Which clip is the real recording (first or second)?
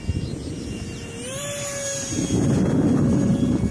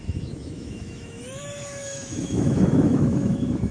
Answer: first